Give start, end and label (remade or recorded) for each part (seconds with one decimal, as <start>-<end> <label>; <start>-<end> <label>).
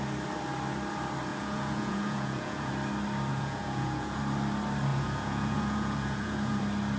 0.0-1.3 recorded; 1.3-2.7 remade; 2.7-3.3 recorded; 3.3-4.2 remade; 4.2-4.9 recorded; 4.9-6.6 remade; 6.6-7.0 recorded